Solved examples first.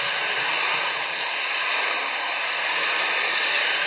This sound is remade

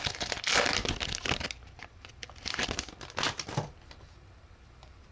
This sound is recorded